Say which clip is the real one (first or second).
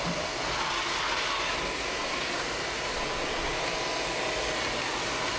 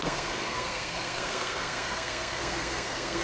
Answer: first